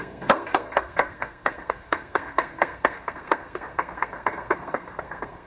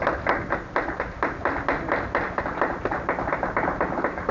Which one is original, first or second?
second